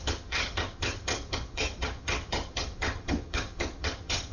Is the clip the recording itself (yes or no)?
no